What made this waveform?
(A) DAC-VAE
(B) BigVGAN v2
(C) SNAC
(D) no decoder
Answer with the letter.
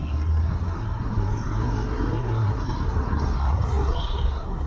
C